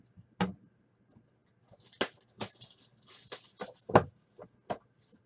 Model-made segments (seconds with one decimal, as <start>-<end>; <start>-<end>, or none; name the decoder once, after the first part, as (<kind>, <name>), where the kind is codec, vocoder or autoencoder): none